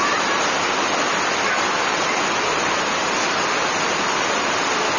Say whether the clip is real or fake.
real